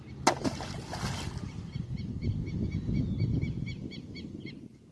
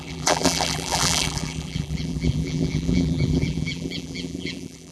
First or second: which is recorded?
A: first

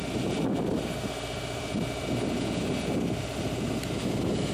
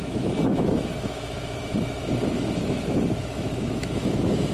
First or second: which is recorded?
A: first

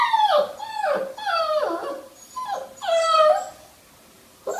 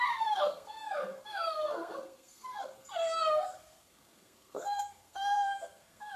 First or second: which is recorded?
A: first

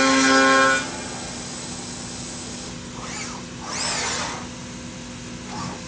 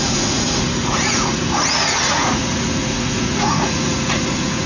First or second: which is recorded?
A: first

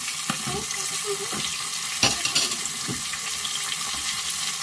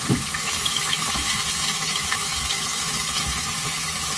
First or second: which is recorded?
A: first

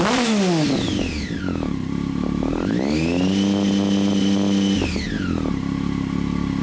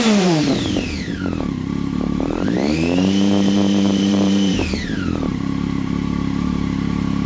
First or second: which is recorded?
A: first